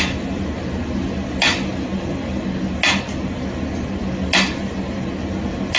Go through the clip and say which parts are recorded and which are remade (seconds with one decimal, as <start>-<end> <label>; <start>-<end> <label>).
0.0-5.8 recorded